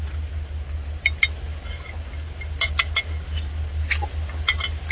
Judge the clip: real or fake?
real